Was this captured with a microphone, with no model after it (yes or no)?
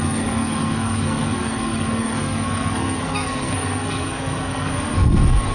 no